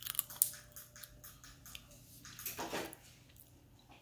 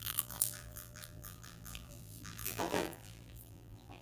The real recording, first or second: first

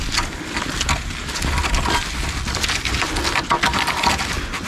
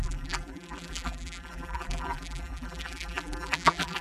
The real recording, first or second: first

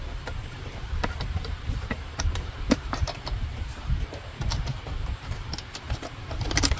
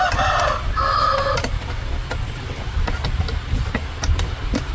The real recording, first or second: second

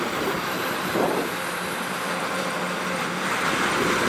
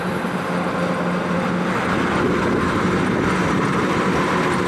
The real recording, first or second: second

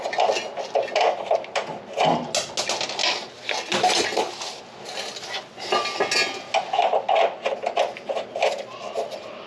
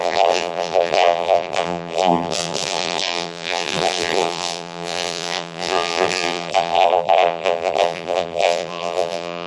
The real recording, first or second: first